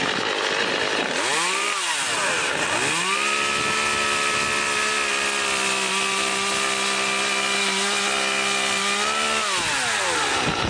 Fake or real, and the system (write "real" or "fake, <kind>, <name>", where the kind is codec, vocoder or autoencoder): real